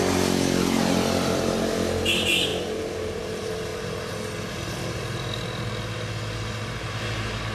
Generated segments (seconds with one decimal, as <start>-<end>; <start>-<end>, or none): 2.5-3.3